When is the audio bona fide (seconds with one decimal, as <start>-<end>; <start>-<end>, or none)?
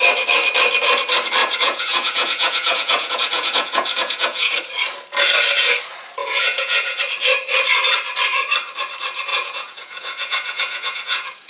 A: 0.0-1.4; 4.5-6.2; 7.0-9.3